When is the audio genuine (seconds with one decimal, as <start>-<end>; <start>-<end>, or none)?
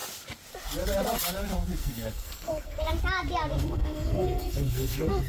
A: 0.0-1.8; 2.9-3.5